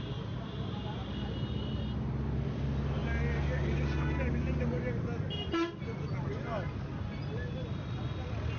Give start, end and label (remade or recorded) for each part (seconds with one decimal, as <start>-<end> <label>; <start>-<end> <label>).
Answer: 0.0-8.6 recorded